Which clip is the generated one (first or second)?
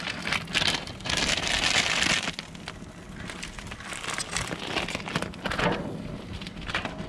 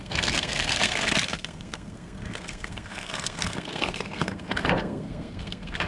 second